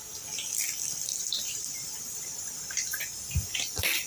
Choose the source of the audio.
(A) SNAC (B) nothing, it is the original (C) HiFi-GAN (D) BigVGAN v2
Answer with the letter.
D